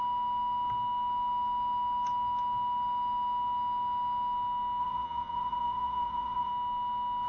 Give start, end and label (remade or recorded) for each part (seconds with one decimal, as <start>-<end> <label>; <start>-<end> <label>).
0.0-4.8 recorded; 4.8-6.5 remade; 6.5-7.3 recorded